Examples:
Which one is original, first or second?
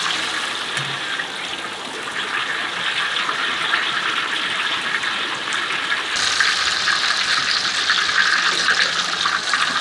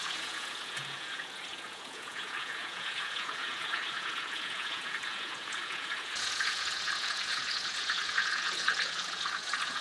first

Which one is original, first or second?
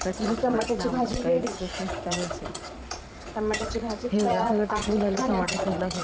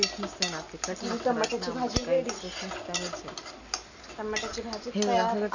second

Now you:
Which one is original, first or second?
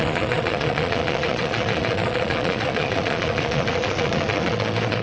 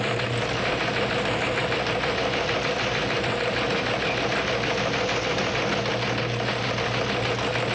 second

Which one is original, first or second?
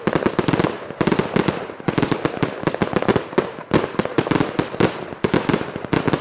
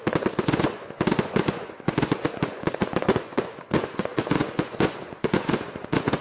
first